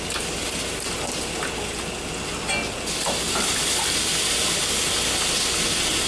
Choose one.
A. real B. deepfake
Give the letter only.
A